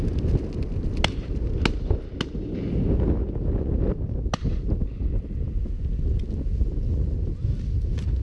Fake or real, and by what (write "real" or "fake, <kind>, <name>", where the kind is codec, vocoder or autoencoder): real